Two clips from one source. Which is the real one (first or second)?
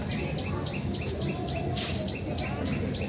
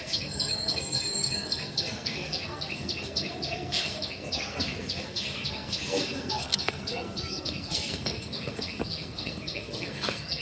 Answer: first